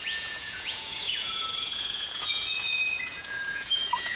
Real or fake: fake